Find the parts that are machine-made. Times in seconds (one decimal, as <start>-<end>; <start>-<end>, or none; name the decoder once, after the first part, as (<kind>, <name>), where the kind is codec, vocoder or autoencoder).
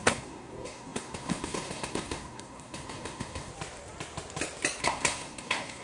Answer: 0.0-3.5 (codec, SNAC); 4.8-5.8